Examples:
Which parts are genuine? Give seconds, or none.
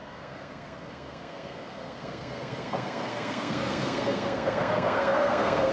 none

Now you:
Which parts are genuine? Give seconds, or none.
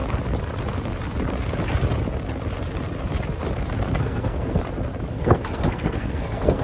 0.0-4.0; 4.6-5.1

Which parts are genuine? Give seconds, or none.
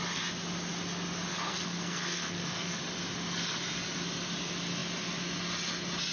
0.0-1.3; 2.8-6.1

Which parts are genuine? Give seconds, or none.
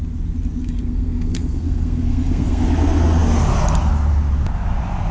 0.0-0.6; 2.6-5.1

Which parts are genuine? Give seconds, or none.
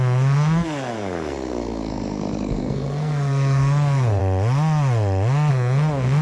4.2-5.5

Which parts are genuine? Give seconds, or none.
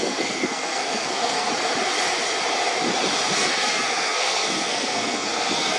1.5-3.3